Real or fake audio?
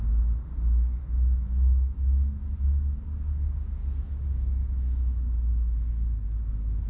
real